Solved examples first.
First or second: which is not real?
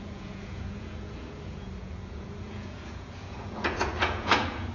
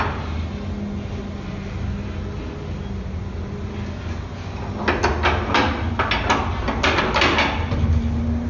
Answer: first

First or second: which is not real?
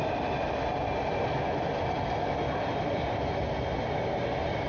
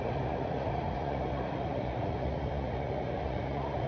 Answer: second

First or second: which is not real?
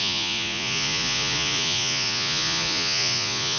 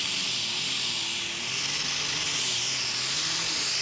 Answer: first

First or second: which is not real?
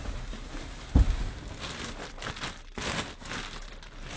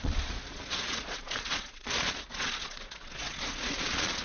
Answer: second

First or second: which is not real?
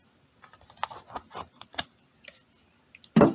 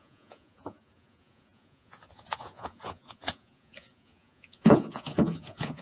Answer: second